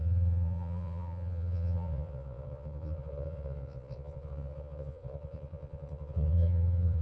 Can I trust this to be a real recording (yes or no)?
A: no